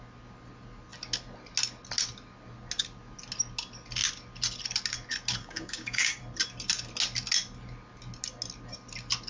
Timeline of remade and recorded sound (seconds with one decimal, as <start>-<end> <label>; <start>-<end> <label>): 0.0-5.4 recorded; 5.4-6.2 remade; 6.2-9.3 recorded